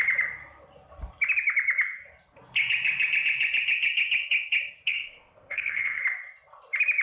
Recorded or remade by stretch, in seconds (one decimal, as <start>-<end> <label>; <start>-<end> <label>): 0.0-4.9 recorded; 4.9-6.0 remade; 6.0-7.0 recorded